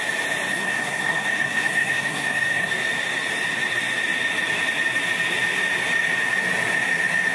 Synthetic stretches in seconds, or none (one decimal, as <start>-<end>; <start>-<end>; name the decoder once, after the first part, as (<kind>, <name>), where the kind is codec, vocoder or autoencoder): 0.5-2.7 (codec, SNAC)